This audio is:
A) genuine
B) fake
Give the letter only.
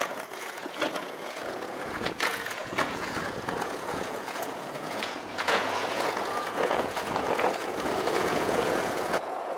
B